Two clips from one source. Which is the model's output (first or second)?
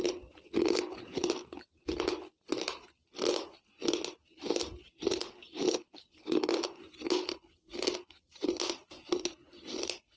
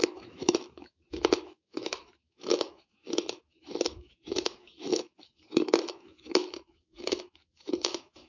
second